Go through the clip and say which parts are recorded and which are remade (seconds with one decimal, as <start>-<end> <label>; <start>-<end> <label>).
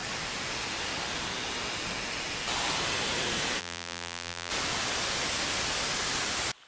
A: 0.0-3.6 recorded; 3.6-4.5 remade; 4.5-6.7 recorded